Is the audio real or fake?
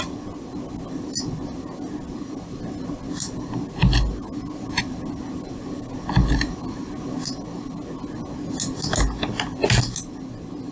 real